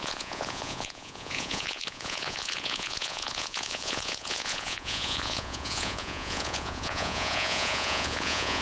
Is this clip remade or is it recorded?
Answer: remade